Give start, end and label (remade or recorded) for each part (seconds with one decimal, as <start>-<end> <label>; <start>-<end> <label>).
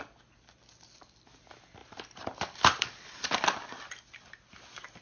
0.0-1.8 recorded; 1.8-3.8 remade; 3.8-5.0 recorded